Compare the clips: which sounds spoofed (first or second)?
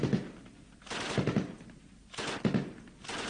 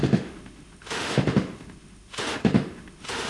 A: second